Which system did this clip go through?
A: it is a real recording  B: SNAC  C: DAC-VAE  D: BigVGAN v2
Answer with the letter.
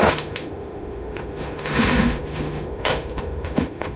C